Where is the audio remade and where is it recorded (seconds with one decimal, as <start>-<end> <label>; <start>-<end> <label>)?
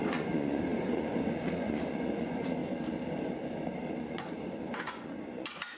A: 0.0-2.6 remade; 2.6-4.0 recorded; 4.0-5.8 remade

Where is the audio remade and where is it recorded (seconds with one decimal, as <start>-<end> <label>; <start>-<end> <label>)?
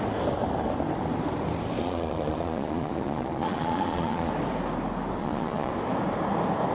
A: 0.0-1.8 recorded; 1.8-4.3 remade; 4.3-5.2 recorded; 5.2-5.7 remade; 5.7-6.7 recorded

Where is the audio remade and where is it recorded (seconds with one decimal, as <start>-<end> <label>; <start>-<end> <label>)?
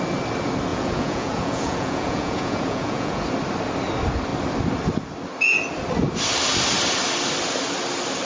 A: 0.0-0.7 recorded; 0.7-3.2 remade; 3.2-8.3 recorded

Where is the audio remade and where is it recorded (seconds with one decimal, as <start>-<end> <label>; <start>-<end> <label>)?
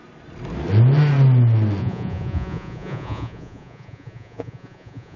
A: 0.0-1.8 recorded; 1.8-5.2 remade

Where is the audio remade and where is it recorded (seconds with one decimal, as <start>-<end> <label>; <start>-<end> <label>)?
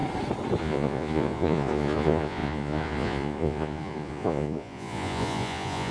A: 0.0-0.6 recorded; 0.6-5.9 remade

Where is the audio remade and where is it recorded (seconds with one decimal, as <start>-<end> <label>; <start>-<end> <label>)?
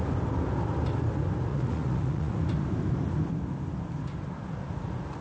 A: 0.0-1.5 recorded; 1.5-2.4 remade; 2.4-5.2 recorded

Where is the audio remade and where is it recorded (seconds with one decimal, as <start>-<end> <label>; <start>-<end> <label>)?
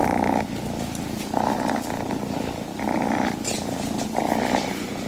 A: 0.0-5.1 recorded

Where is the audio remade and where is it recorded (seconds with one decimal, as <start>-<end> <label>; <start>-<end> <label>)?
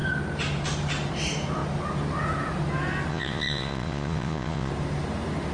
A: 0.0-3.1 recorded; 3.1-4.7 remade; 4.7-5.5 recorded